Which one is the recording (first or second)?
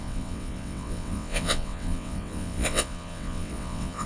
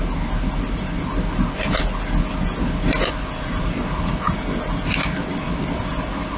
second